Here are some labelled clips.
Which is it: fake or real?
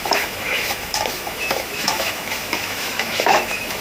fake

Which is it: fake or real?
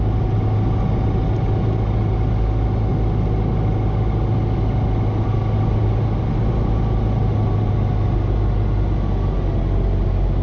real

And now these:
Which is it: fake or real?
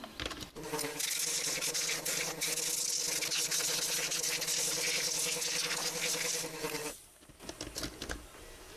real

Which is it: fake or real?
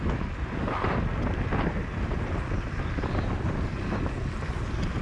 real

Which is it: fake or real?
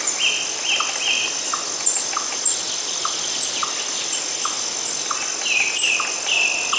real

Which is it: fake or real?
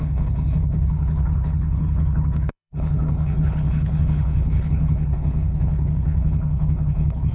fake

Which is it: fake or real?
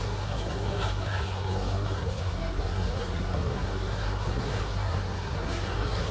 fake